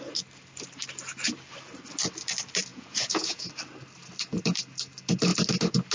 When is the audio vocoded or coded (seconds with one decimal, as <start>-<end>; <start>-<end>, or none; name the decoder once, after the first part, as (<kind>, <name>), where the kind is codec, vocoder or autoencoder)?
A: 2.7-3.5 (vocoder, Vocos)